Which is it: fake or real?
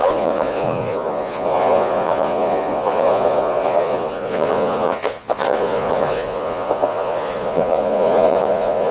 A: fake